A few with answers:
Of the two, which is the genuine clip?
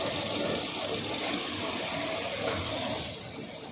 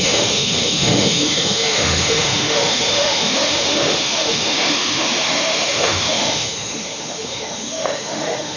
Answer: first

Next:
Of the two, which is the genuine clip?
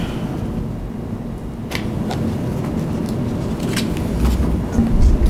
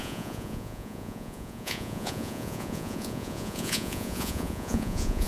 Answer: first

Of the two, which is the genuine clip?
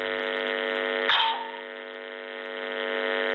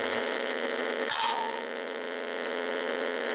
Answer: first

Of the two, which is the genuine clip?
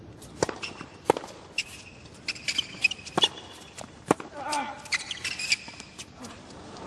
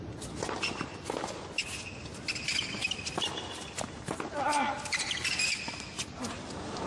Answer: second